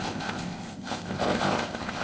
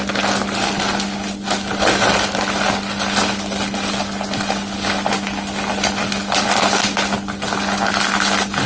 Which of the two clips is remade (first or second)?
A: first